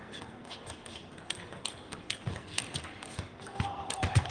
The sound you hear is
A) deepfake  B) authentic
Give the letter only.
A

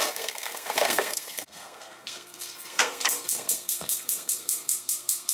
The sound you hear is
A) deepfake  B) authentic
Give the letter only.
A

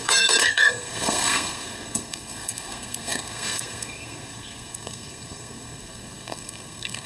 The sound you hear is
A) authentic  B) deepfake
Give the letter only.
B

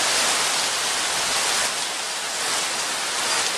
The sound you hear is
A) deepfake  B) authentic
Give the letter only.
B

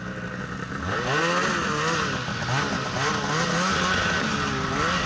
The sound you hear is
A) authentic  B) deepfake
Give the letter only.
A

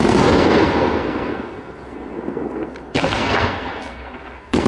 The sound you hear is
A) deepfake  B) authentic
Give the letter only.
A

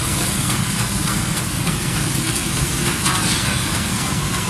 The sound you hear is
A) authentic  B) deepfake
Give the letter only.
B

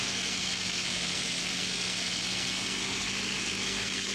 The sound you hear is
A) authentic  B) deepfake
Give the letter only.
B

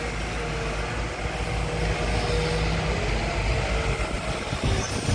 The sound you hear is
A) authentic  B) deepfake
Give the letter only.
A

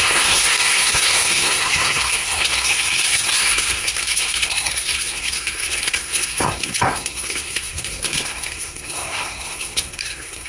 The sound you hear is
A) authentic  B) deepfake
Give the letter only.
B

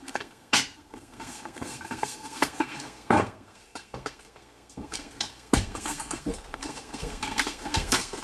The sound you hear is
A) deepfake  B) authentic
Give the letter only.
A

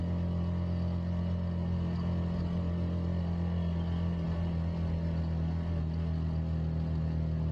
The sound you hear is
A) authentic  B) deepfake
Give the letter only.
A